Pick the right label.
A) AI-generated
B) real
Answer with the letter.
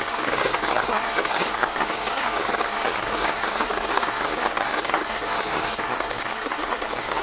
A